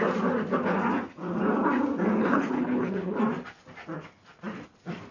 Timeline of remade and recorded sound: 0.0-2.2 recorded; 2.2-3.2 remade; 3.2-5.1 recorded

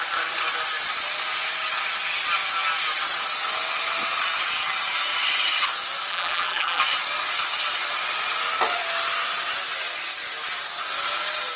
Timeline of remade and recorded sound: 0.0-6.1 recorded; 6.1-6.8 remade; 6.8-11.6 recorded

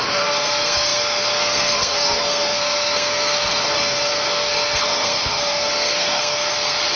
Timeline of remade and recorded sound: 0.0-7.0 remade

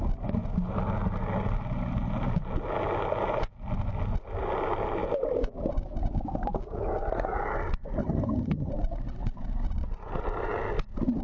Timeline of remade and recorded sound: 0.0-8.0 recorded; 8.0-8.7 remade; 8.7-11.2 recorded

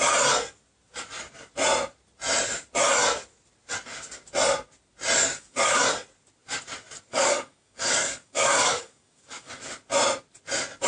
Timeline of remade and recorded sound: 0.0-5.2 recorded; 5.2-5.8 remade; 5.8-7.1 recorded; 7.1-9.5 remade; 9.5-10.9 recorded

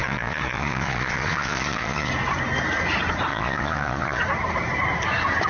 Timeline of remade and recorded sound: 0.0-2.1 remade; 2.1-3.3 recorded; 3.3-4.2 remade; 4.2-5.5 recorded

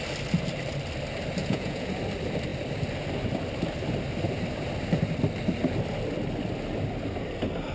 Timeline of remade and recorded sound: 0.0-1.4 recorded; 1.4-1.9 remade; 1.9-7.7 recorded

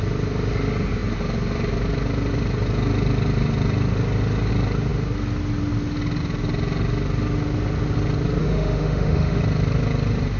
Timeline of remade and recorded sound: 0.0-8.4 recorded; 8.4-9.4 remade; 9.4-10.4 recorded